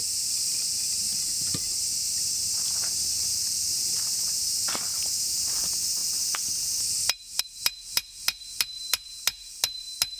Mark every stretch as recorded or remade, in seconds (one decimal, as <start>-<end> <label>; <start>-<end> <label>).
0.0-10.2 recorded